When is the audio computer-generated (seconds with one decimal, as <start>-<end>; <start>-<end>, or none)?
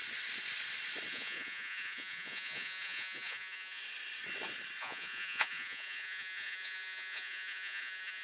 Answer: 1.1-3.8; 4.8-8.2